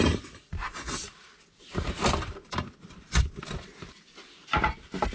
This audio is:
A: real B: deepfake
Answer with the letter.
A